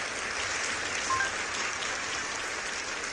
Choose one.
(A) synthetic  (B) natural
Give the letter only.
B